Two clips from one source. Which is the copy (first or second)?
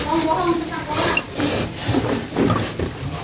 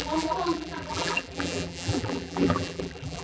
second